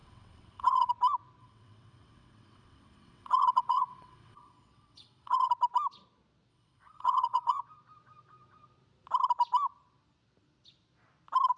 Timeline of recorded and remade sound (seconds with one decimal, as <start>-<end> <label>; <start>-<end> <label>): 0.0-0.9 remade; 0.9-1.4 recorded; 1.4-5.5 remade; 5.5-6.5 recorded; 6.5-7.6 remade; 7.6-11.6 recorded